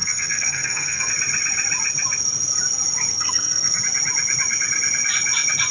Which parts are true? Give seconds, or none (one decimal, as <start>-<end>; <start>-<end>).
1.1-3.1; 3.8-5.7

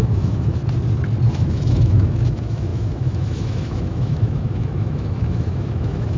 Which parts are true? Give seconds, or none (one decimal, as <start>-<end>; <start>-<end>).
0.6-1.3

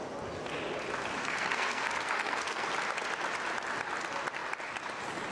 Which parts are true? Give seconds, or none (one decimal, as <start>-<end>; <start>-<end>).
0.0-1.2; 2.7-5.3

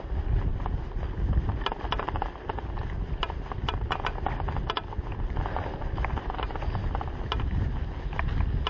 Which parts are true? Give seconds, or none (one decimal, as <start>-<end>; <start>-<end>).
0.0-8.7

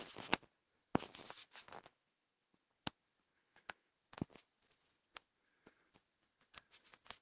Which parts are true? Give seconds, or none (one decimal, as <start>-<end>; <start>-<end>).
0.0-1.4; 2.7-3.4; 3.9-7.2